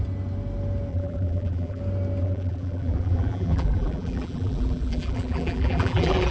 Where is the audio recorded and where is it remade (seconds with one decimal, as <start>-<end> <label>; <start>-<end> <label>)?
0.0-0.9 recorded; 0.9-1.8 remade; 1.8-2.2 recorded; 2.2-6.3 remade